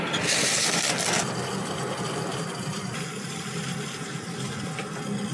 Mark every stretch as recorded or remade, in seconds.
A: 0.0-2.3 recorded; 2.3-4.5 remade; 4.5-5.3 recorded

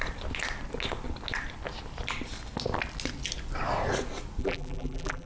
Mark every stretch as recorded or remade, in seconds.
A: 0.0-4.4 recorded; 4.4-5.3 remade

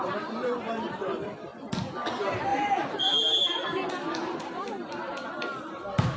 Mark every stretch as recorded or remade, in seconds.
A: 0.0-1.5 remade; 1.5-2.1 recorded; 2.1-6.2 remade

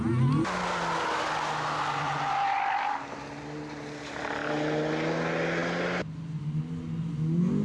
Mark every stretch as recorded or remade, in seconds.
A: 0.0-7.6 recorded